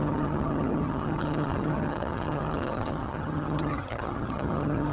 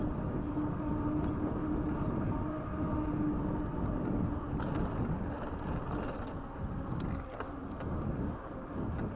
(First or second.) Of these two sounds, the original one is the second